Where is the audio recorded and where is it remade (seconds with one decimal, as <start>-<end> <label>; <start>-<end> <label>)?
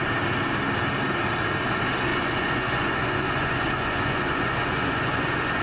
0.0-2.1 recorded; 2.1-5.6 remade